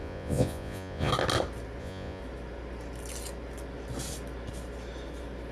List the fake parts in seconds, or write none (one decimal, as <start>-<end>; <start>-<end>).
0.0-1.1; 1.8-2.2